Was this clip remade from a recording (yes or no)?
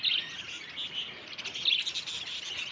no